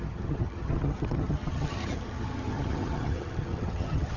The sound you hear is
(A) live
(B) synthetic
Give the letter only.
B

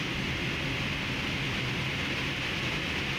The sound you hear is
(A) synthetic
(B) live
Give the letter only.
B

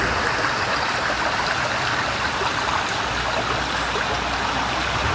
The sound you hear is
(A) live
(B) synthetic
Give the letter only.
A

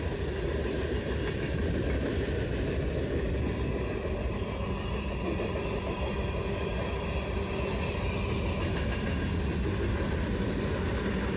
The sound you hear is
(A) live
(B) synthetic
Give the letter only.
A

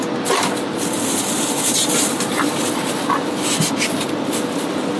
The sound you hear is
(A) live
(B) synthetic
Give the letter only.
A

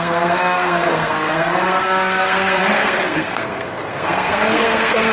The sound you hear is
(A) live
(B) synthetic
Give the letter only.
B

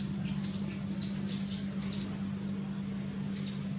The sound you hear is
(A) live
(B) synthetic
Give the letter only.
A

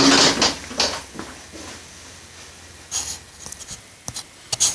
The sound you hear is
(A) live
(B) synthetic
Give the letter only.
A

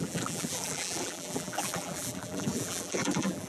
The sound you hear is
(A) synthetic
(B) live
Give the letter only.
A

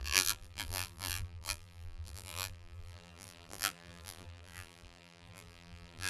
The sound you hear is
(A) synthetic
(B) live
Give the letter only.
A